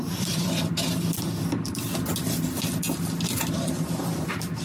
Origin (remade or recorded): remade